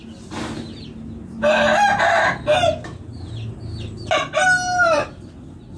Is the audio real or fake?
real